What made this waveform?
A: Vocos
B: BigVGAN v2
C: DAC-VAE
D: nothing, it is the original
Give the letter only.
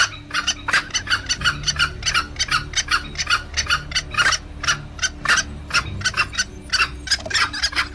D